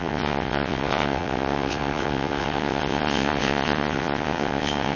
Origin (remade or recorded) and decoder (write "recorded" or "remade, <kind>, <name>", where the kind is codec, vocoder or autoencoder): remade, vocoder, WaveNeXt